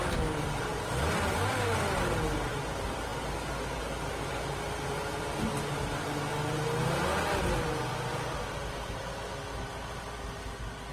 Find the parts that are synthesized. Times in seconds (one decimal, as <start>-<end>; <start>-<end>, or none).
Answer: none